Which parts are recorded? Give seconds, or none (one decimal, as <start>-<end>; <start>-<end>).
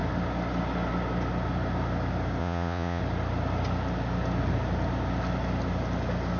0.0-2.4; 3.0-6.4